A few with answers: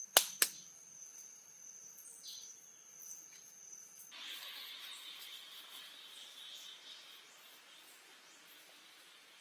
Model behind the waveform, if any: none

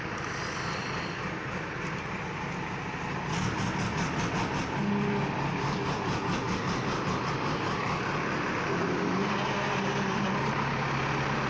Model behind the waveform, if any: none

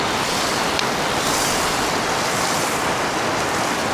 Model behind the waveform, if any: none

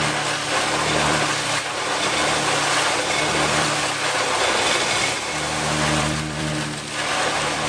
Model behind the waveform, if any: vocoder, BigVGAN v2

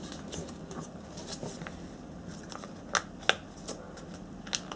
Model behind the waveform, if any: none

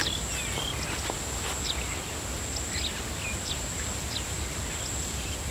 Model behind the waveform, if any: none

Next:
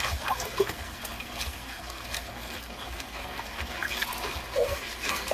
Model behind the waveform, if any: codec, SNAC